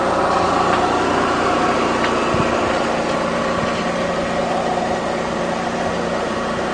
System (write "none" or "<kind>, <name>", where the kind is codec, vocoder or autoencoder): none